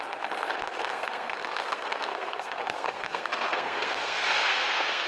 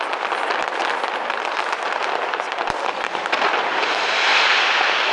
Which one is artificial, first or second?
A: first